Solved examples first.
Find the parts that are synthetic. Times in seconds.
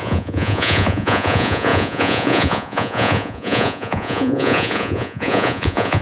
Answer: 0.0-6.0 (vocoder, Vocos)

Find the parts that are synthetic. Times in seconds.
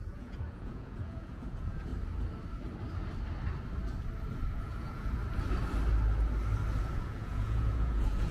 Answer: 0.0-1.9 (vocoder, Vocos); 4.5-5.2; 6.8-8.3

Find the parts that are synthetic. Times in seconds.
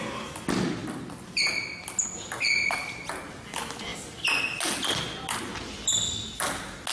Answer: none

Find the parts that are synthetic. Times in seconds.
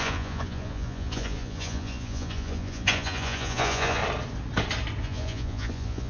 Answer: 0.0-4.0 (vocoder, Vocos); 5.0-6.1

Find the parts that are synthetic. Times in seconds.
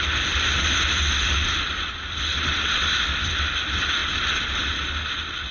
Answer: none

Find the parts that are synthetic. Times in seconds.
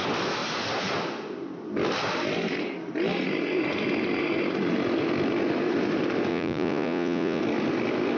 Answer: 6.3-7.4 (vocoder, Vocos)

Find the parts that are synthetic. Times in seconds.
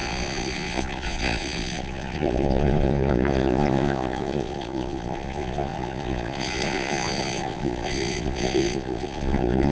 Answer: 0.0-9.7 (vocoder, Vocos)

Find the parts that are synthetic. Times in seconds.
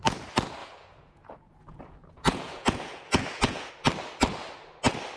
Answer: 0.6-3.7 (vocoder, Vocos)